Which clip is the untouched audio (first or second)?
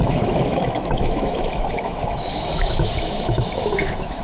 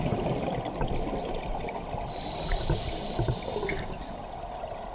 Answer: second